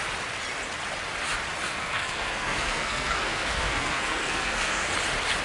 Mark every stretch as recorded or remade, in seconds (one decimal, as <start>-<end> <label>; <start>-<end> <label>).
0.0-1.7 recorded; 1.7-4.9 remade; 4.9-5.4 recorded